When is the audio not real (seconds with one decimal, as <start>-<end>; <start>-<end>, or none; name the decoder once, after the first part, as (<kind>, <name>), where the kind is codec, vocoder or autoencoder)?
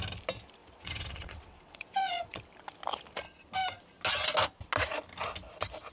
0.6-2.4 (vocoder, WaveNeXt)